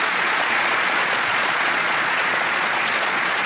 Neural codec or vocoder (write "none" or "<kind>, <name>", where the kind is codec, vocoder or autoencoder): vocoder, Vocos